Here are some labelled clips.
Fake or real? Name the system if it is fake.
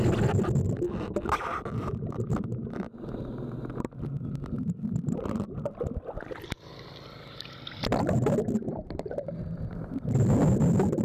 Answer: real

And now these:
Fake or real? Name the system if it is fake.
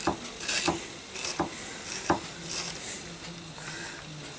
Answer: real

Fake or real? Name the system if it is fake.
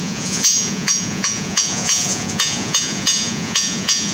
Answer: fake, vocoder, Vocos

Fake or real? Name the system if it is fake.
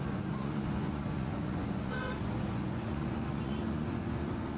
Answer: fake, vocoder, Vocos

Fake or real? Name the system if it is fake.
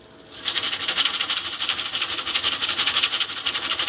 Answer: real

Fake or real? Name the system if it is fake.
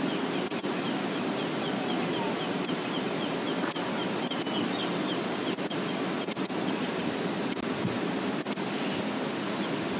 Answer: real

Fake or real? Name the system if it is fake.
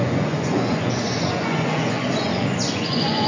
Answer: fake, vocoder, Vocos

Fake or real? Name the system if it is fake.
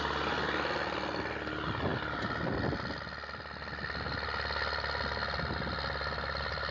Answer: real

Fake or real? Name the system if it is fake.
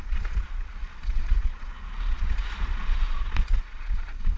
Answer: fake, vocoder, Vocos